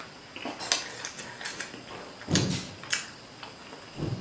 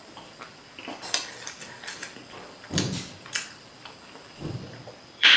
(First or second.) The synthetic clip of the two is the second